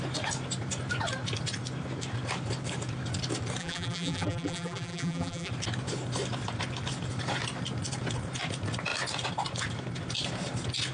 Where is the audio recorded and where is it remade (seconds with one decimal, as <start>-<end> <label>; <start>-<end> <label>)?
0.0-3.6 recorded; 3.6-5.5 remade; 5.5-10.9 recorded